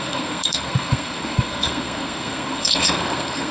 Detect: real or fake fake